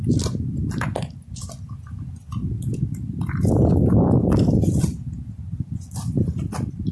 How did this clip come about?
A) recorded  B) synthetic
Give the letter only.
A